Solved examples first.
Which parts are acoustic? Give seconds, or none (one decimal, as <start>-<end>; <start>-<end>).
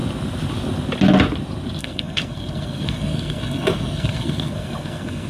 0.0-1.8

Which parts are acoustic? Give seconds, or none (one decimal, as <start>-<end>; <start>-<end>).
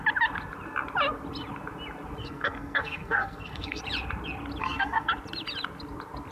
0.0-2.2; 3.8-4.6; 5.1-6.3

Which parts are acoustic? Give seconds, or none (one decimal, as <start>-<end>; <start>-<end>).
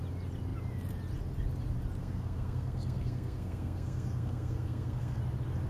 0.0-2.0; 5.2-5.7